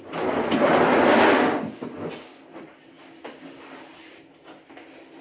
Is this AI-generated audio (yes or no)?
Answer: no